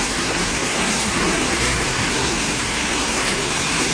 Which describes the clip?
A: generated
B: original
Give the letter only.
A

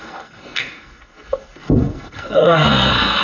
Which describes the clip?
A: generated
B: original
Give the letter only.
A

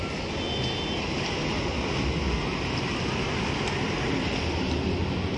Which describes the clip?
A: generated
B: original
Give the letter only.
B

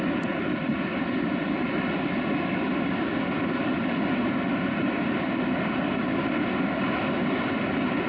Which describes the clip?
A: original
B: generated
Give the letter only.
A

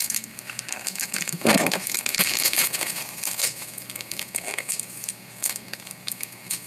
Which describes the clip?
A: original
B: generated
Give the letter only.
B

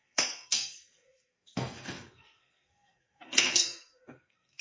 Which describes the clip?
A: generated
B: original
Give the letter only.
A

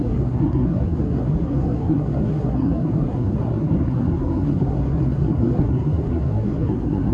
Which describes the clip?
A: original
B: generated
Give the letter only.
B